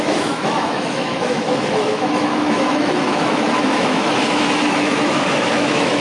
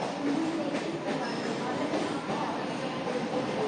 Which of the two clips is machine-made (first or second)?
first